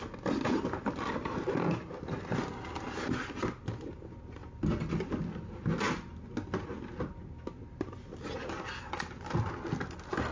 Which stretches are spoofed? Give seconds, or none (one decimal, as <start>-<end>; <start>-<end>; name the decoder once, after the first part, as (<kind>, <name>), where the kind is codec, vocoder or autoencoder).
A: none

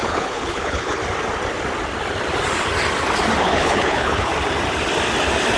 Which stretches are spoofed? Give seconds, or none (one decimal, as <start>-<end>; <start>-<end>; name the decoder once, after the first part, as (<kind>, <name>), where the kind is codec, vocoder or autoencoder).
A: 0.0-1.0 (codec, HILCodec); 3.4-4.3